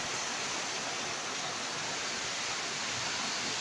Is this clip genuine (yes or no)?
yes